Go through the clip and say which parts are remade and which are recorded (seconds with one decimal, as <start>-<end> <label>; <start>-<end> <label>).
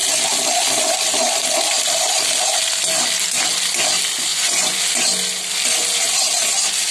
0.0-4.3 recorded; 4.3-4.8 remade; 4.8-6.9 recorded